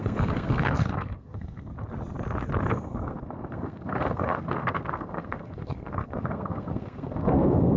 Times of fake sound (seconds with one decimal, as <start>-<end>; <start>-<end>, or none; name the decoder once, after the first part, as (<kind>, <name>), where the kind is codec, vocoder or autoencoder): 0.0-1.7 (codec, SNAC); 2.7-7.8